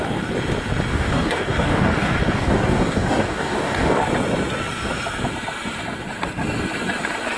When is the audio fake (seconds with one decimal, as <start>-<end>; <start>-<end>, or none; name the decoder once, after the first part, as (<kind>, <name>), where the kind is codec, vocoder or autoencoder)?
0.9-4.0 (codec, DAC)